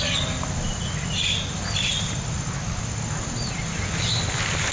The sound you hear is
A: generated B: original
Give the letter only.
B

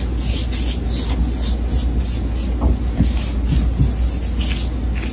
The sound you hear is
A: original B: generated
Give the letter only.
A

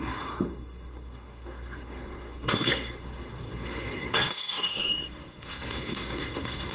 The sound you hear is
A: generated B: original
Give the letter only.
A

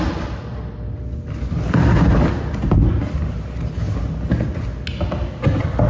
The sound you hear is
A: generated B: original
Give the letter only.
B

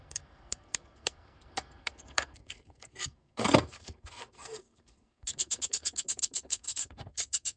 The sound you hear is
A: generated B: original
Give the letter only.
A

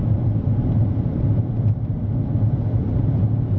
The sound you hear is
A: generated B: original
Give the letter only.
B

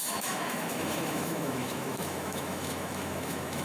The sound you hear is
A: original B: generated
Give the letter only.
B